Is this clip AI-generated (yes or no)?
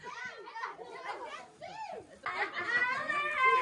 yes